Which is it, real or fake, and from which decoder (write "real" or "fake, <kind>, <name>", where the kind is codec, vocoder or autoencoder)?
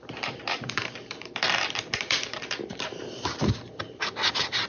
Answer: fake, vocoder, BigVGAN v2